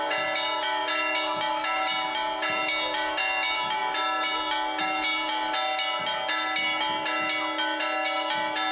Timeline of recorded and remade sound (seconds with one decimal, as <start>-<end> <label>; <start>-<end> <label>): 0.0-8.7 recorded

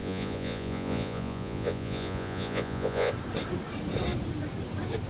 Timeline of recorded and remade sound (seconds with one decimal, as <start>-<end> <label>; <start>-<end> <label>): 0.0-3.1 remade; 3.1-5.1 recorded

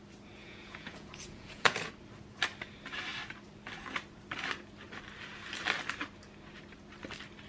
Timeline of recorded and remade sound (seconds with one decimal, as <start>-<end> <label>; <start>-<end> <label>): 0.0-0.4 recorded; 0.4-1.9 remade; 1.9-7.5 recorded

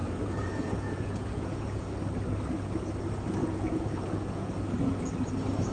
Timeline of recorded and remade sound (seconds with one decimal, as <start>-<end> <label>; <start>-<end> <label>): 0.0-1.8 remade; 1.8-3.4 recorded; 3.4-4.5 remade; 4.5-5.7 recorded